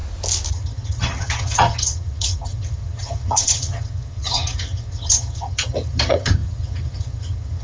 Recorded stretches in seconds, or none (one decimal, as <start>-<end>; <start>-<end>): 0.0-0.5